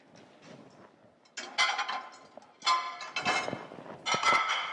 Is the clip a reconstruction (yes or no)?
no